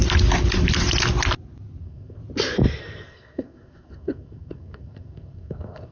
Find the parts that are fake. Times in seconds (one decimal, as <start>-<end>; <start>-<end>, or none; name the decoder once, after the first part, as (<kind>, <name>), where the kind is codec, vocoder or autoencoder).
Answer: 1.8-2.2 (codec, SNAC); 2.8-5.9